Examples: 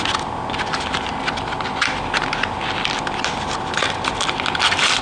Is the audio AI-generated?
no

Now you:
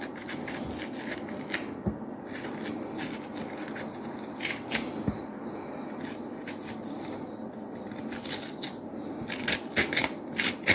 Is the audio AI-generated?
no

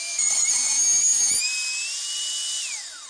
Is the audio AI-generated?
no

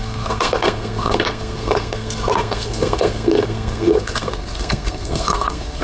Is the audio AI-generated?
yes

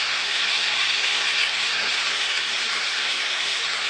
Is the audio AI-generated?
yes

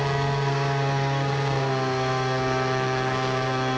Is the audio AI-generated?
yes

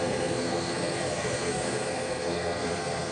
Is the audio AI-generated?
yes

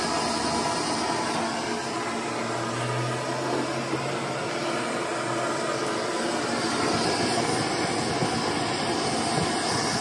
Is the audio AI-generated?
no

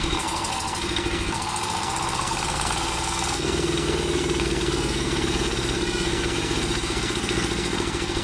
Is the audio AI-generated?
yes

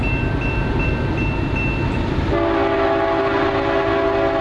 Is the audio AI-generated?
no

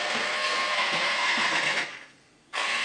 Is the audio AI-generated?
yes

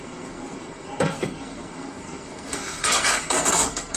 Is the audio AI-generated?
yes